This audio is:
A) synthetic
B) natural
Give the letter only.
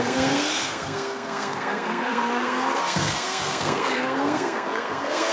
A